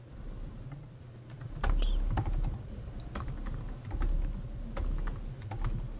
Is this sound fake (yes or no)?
no